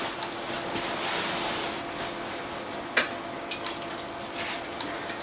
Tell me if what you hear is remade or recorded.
recorded